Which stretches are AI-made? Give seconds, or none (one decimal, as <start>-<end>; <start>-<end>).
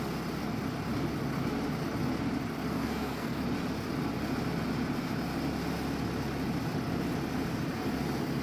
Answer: 2.7-3.4